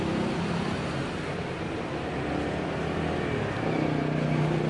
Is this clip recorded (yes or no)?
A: yes